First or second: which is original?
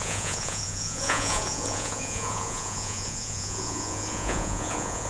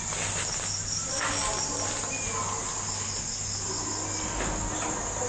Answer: second